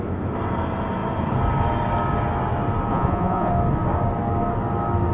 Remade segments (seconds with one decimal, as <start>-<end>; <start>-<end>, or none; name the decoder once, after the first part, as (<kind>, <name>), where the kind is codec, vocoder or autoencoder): 2.9-3.5 (vocoder, Vocos)